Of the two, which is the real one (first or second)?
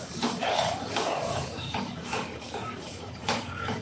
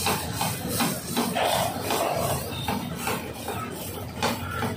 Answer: second